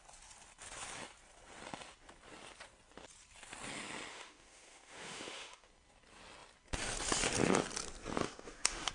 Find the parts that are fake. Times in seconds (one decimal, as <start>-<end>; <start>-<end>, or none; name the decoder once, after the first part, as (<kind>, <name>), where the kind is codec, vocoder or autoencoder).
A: 4.1-5.7 (autoencoder, DAC-VAE); 8.2-8.9